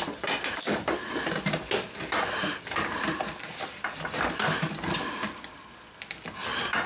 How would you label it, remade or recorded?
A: recorded